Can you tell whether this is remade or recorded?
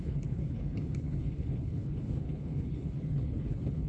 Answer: remade